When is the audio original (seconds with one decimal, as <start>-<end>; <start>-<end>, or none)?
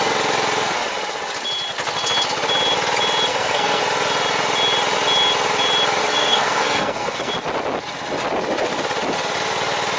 0.0-3.3; 3.8-6.0; 7.3-10.0